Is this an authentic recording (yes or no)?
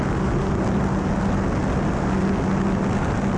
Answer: yes